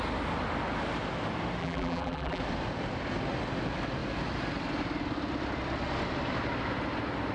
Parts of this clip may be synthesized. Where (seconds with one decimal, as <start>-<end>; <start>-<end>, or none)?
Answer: 1.6-2.4

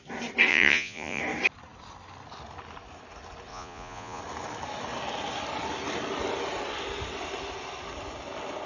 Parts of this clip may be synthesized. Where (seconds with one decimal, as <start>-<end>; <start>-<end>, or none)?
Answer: 0.5-1.2; 3.5-4.2

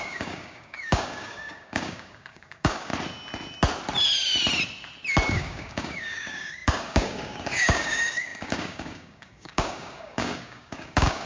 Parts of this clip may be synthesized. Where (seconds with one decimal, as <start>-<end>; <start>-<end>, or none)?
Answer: 0.0-2.9; 5.3-11.3

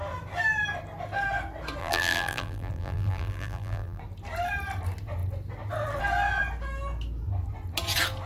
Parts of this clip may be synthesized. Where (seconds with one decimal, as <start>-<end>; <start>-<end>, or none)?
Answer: 1.8-4.0

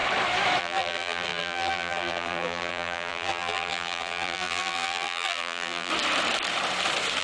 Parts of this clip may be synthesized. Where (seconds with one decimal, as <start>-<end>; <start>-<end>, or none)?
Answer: 0.6-5.9

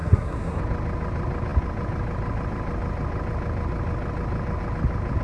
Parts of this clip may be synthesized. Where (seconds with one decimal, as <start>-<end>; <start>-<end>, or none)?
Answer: 0.0-0.6

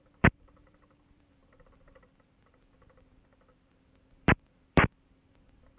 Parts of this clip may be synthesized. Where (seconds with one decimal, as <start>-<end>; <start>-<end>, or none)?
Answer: 0.0-5.8

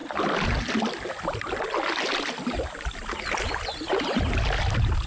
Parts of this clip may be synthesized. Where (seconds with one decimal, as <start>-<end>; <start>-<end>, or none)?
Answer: none